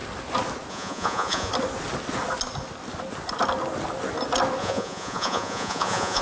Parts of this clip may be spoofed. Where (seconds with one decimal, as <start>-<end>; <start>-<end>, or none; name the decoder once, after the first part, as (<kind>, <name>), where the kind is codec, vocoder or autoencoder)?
0.7-1.5 (vocoder, Vocos); 4.6-6.2